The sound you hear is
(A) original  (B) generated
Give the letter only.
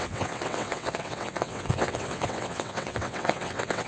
B